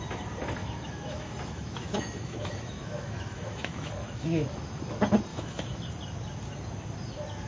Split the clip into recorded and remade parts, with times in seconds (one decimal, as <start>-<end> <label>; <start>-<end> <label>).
0.0-0.6 recorded; 0.6-4.7 remade; 4.7-5.3 recorded; 5.3-5.8 remade; 5.8-7.5 recorded